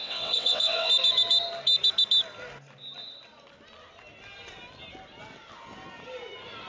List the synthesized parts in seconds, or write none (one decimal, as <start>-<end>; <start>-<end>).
0.0-0.9